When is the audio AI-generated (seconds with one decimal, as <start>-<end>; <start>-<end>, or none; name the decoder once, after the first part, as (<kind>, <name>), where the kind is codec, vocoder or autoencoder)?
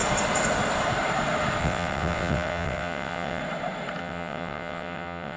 1.6-3.4 (vocoder, WaveNeXt); 4.0-5.4